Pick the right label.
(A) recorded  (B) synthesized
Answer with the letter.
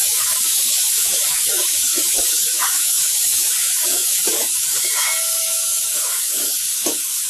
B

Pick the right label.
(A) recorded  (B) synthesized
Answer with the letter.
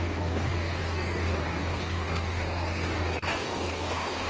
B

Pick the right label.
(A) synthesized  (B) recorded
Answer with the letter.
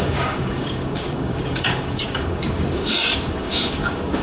A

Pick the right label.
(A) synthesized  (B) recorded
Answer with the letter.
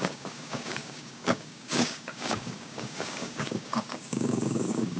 A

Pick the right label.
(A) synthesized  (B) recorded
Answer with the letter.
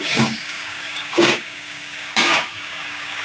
A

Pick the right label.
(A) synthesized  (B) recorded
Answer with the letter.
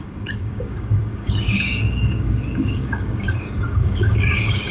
A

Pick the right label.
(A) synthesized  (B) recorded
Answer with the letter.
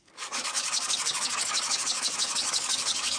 A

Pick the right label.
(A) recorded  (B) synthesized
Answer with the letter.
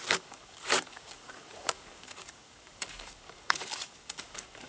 B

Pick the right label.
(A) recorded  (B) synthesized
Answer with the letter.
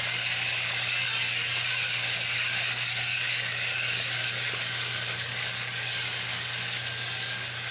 B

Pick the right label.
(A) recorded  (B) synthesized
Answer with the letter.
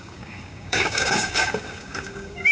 B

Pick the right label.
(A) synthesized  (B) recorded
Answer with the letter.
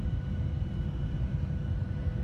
B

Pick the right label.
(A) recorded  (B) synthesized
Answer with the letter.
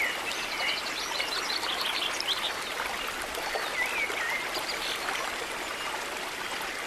A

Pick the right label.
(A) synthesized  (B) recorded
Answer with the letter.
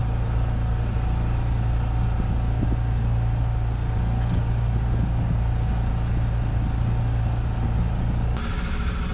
B